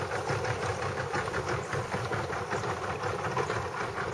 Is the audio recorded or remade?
recorded